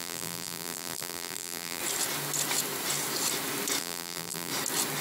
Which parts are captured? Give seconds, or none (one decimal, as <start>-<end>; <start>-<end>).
1.8-3.8; 4.5-5.0